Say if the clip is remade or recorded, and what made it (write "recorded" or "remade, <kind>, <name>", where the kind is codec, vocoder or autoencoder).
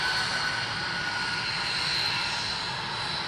recorded